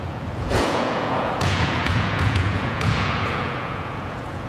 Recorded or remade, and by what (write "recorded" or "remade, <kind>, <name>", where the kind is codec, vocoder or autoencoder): remade, vocoder, Vocos